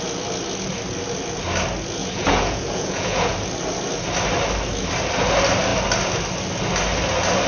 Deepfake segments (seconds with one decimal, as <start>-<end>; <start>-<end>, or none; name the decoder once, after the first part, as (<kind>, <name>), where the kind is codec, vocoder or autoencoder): 2.0-3.3 (vocoder, Vocos)